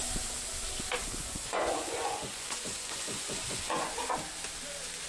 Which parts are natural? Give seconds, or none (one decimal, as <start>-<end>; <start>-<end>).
0.0-1.0; 4.0-5.1